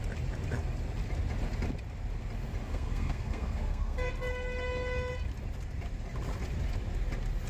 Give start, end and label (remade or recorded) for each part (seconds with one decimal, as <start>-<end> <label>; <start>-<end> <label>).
0.0-2.7 recorded; 2.7-4.1 remade; 4.1-7.5 recorded